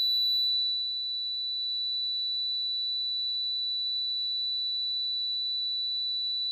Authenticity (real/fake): real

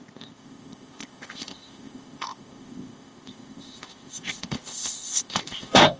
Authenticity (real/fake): fake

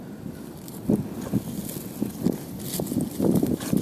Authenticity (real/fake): real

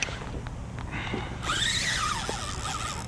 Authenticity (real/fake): real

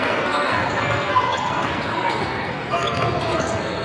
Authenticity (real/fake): fake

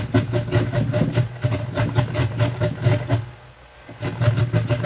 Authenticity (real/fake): real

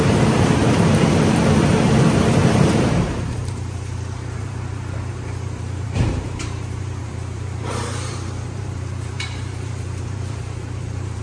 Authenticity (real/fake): fake